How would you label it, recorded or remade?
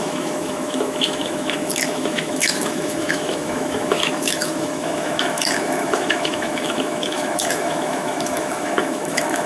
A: remade